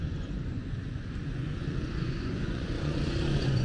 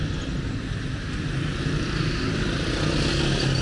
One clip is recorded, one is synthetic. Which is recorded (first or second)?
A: second